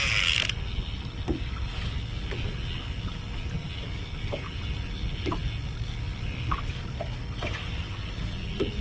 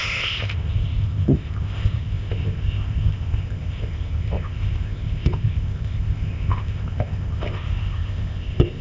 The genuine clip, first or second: first